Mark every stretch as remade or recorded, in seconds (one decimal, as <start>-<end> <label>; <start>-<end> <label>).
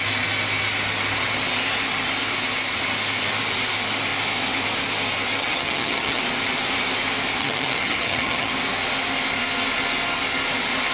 0.0-5.4 recorded; 5.4-6.2 remade; 6.2-7.4 recorded; 7.4-8.5 remade; 8.5-10.9 recorded